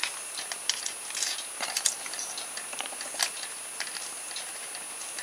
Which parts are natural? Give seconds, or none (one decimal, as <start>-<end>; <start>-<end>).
0.0-5.2